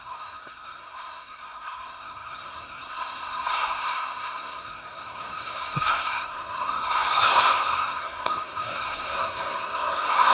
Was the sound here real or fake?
fake